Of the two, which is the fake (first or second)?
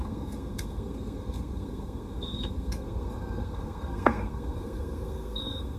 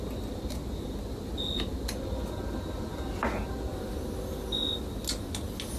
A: first